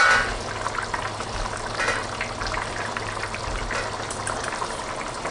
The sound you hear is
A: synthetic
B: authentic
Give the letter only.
B